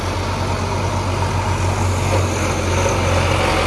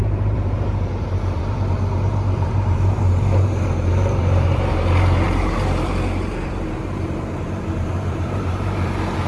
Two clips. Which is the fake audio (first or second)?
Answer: second